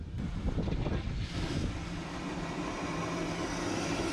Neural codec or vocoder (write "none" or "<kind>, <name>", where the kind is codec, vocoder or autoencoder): none